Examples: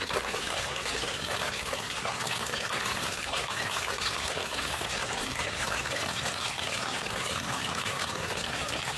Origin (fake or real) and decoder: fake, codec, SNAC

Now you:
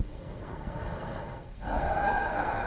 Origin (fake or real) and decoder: fake, codec, SNAC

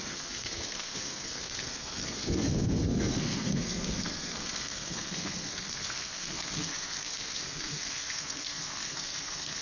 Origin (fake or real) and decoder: fake, codec, SNAC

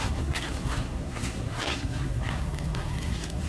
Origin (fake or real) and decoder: fake, codec, SNAC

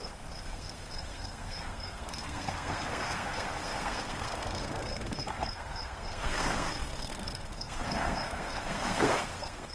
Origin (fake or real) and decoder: fake, codec, SNAC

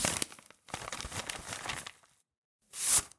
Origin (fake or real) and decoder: real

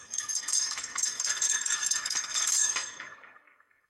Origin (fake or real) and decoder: fake, codec, SNAC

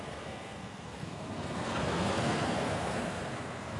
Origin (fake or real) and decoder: fake, codec, SNAC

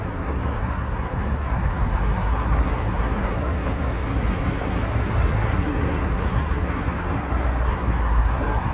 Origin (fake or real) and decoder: fake, codec, SNAC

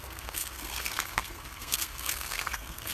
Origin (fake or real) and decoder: fake, codec, SNAC